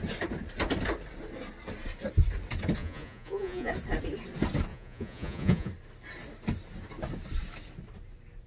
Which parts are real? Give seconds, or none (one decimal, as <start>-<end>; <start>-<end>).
0.0-2.8; 3.7-4.7; 5.7-8.5